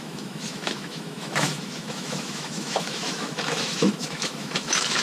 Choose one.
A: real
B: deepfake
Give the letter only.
B